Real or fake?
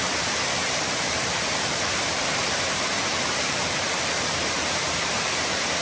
fake